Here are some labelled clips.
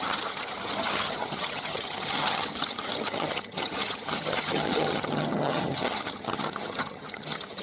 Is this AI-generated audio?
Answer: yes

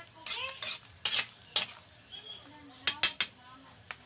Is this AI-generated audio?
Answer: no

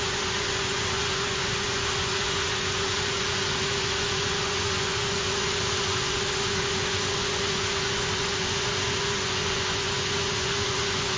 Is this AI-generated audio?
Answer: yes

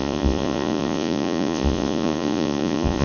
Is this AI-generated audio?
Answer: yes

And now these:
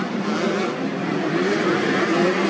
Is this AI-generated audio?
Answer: no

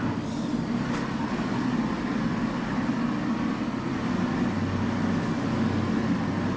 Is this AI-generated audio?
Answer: no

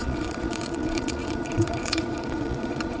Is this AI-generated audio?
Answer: yes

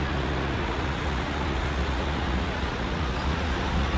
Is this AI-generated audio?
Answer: yes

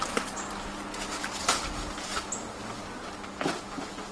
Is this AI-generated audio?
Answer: no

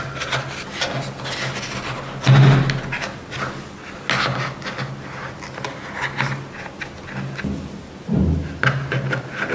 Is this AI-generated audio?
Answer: no